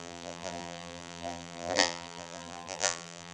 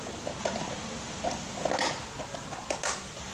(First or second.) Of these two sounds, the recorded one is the second